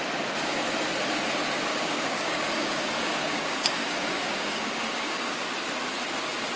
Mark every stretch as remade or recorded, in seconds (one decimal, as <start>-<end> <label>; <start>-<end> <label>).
0.0-1.7 recorded; 1.7-5.4 remade; 5.4-6.6 recorded